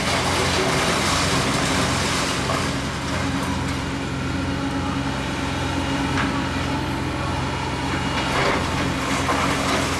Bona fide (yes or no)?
yes